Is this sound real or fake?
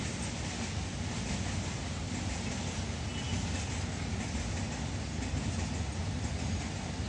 real